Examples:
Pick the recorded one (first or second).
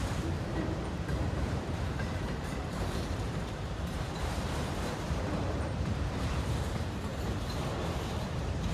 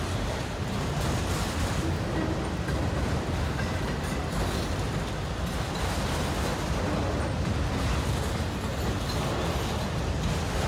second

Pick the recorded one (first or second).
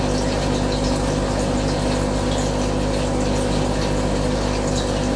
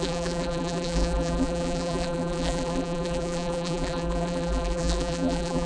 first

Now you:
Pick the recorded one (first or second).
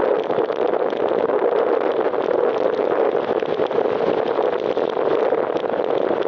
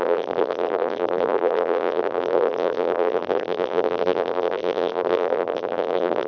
first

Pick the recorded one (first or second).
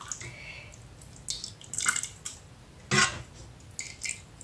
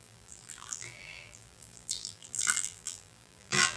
first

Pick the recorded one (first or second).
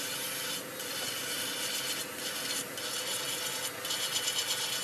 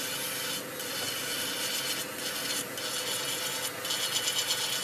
second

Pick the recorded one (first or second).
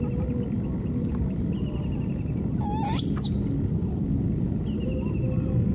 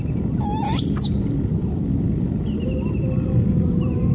first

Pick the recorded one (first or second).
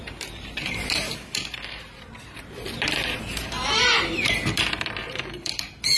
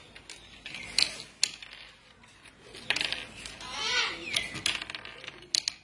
second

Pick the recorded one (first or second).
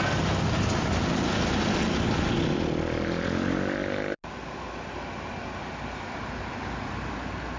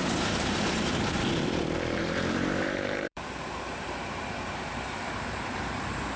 first